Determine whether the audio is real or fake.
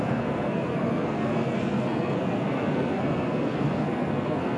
fake